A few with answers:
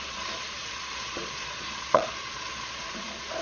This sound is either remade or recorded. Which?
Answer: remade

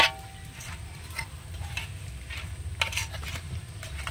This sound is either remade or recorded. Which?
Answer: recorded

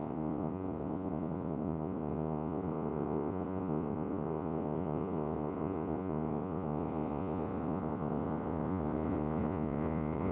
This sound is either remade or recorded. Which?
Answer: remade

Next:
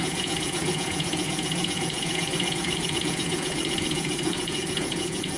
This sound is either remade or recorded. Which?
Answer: remade